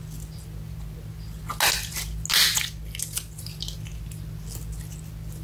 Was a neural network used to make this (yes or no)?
no